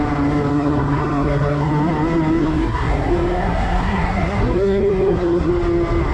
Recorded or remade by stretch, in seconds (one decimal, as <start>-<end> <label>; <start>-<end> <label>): 0.0-0.5 recorded; 0.5-1.7 remade; 1.7-2.4 recorded; 2.4-5.5 remade; 5.5-6.1 recorded